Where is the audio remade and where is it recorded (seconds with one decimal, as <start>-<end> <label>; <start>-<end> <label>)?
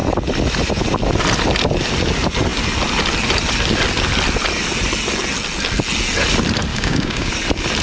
0.0-6.7 recorded; 6.7-7.3 remade; 7.3-7.8 recorded